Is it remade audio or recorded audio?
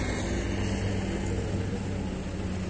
recorded